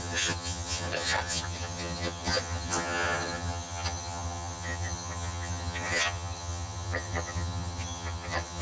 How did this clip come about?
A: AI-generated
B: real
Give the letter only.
A